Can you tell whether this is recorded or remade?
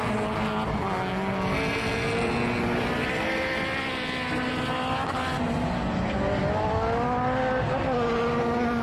recorded